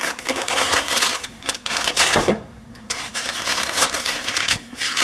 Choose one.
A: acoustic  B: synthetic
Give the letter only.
B